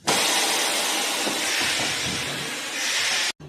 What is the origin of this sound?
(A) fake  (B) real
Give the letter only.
B